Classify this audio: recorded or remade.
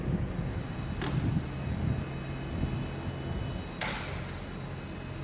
recorded